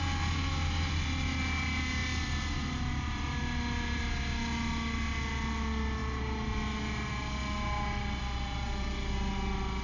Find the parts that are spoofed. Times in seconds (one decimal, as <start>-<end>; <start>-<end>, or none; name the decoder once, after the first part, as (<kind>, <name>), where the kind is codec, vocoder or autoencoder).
none